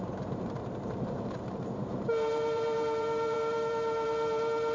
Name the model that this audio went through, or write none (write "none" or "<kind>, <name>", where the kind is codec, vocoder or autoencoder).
vocoder, BigVGAN v2